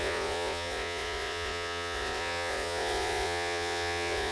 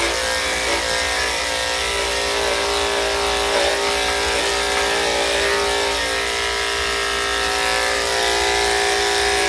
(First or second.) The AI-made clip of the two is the first